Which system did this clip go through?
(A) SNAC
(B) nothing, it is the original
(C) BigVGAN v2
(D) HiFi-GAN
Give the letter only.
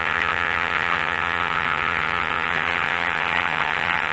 D